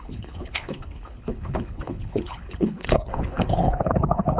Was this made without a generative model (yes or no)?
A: no